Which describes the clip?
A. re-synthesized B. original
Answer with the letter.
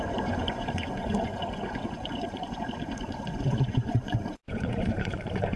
A